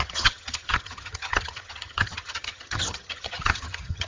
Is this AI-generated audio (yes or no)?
yes